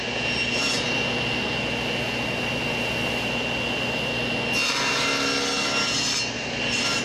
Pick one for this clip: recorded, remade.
recorded